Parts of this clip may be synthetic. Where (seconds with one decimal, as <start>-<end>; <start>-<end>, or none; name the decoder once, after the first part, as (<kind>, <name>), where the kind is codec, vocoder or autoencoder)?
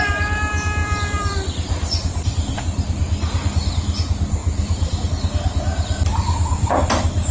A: 0.8-2.6 (vocoder, BigVGAN v2); 4.4-5.1; 6.1-6.7